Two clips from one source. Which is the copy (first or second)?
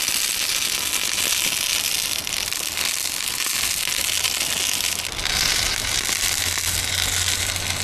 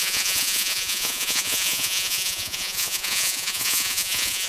second